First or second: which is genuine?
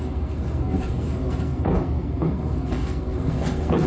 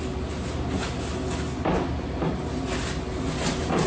second